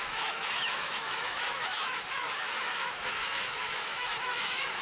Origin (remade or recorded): remade